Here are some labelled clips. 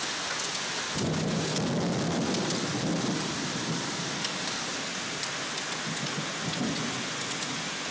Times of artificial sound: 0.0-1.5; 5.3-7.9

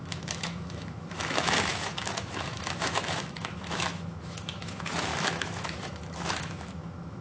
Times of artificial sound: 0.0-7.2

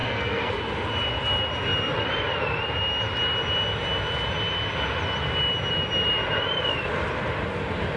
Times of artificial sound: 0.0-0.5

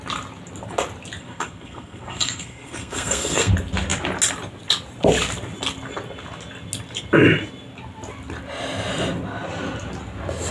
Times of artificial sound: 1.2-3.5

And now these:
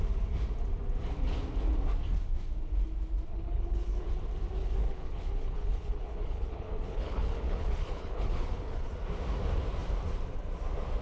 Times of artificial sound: 3.3-4.1; 4.6-8.9

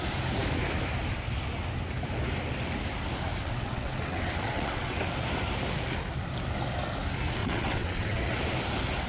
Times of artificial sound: 3.4-5.0; 7.4-8.4

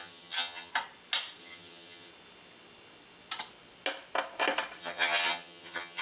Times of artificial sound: 0.0-0.7; 1.4-2.1; 4.8-6.0

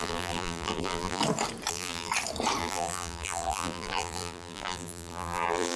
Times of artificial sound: 0.0-1.2; 1.7-2.1; 2.6-5.8